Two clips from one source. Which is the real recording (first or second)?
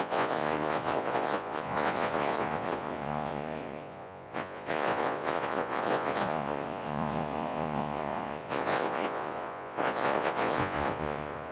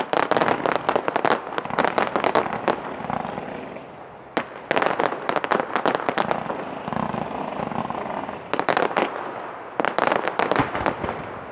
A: second